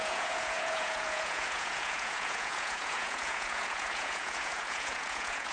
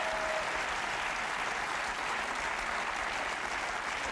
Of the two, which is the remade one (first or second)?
first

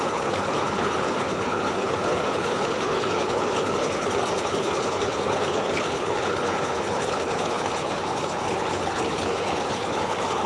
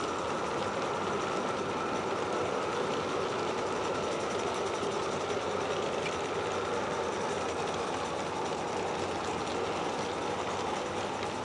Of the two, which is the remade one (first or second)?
first